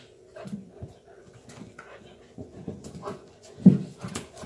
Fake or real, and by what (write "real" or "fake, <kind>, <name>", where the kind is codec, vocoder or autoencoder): fake, vocoder, Vocos